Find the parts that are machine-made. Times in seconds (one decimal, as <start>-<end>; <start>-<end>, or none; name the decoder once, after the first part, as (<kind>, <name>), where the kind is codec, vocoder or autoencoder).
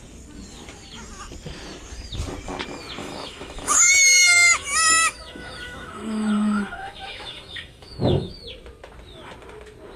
3.0-8.3 (autoencoder, DAC-VAE)